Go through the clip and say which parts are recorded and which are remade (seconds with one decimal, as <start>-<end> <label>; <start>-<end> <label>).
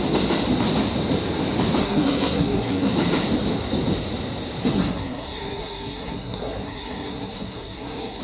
0.0-1.8 recorded; 1.8-2.9 remade; 2.9-4.6 recorded; 4.6-8.2 remade